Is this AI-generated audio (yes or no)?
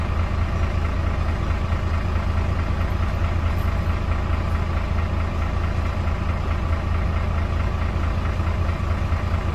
no